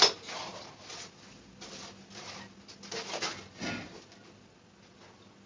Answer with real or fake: real